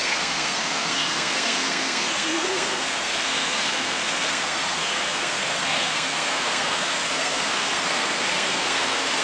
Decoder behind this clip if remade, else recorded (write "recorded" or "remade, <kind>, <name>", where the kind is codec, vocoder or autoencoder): remade, codec, SNAC